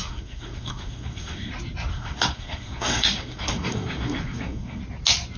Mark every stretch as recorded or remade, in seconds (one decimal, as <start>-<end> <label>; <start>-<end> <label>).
0.0-1.5 remade; 1.5-1.9 recorded; 1.9-4.8 remade; 4.8-5.4 recorded